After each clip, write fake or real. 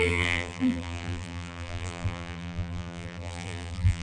fake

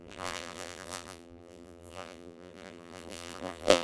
fake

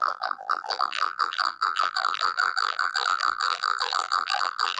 fake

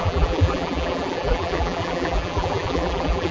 fake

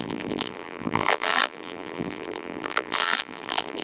fake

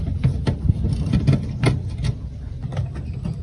real